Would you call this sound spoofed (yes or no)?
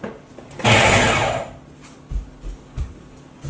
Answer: no